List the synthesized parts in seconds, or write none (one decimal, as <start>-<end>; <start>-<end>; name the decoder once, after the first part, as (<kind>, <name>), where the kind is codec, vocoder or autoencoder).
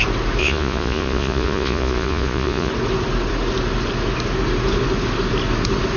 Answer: 0.4-2.7 (vocoder, Vocos)